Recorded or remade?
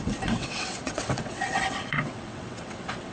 remade